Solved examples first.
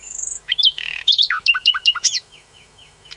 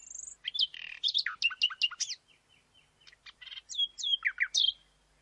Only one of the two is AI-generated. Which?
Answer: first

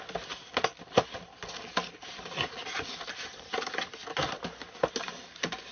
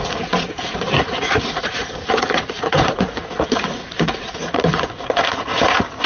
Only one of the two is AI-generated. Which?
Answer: second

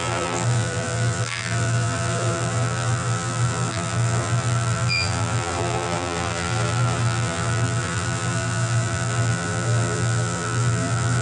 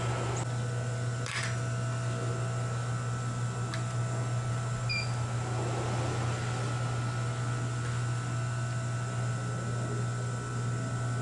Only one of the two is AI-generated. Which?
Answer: first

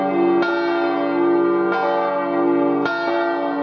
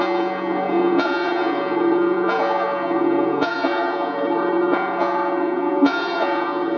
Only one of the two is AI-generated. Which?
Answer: second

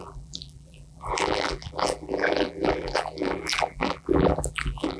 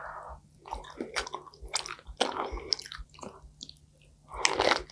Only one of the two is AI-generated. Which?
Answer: first